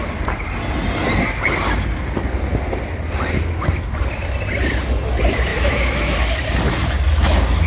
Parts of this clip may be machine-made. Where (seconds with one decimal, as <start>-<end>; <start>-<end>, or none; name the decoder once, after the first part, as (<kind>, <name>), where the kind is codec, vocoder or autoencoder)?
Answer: 5.5-6.2 (autoencoder, DAC-VAE)